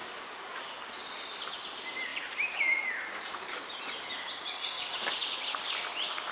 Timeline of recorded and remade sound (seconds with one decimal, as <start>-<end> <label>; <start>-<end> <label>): 0.0-2.1 recorded; 2.1-3.8 remade; 3.8-6.3 recorded